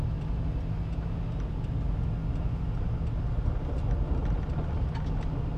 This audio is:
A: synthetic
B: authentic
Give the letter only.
B